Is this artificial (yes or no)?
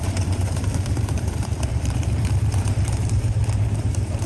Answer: yes